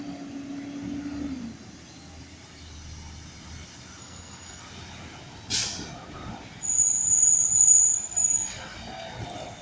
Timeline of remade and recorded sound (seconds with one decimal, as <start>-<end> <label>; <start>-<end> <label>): 0.0-4.0 recorded; 4.0-4.6 remade; 4.6-9.6 recorded